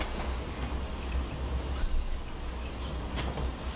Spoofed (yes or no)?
no